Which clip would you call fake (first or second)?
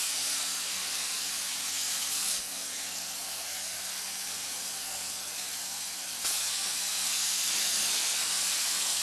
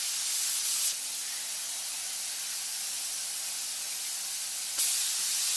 first